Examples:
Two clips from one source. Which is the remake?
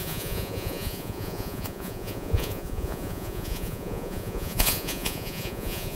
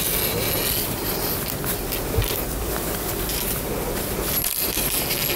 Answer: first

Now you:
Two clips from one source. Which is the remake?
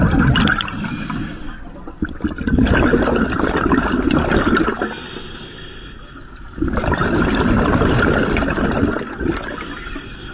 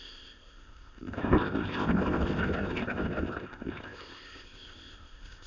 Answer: second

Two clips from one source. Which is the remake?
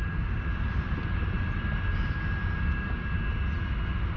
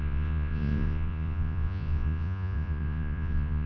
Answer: second